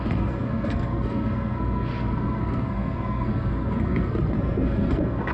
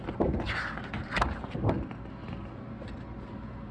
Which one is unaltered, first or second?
second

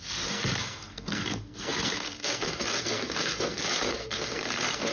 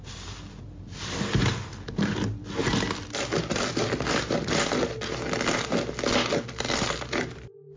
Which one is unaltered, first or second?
second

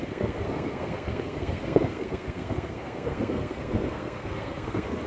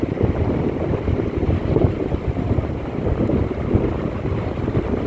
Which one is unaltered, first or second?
second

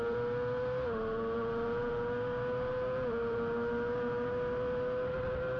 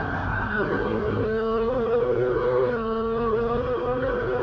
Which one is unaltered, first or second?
first